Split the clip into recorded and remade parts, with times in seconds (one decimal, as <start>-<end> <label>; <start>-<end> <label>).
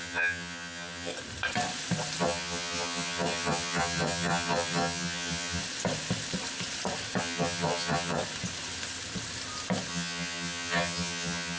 0.0-1.1 remade; 1.1-2.2 recorded; 2.2-5.6 remade; 5.6-7.2 recorded; 7.2-8.2 remade; 8.2-9.9 recorded; 9.9-11.6 remade